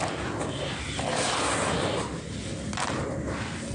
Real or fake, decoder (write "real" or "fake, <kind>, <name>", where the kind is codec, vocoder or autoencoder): real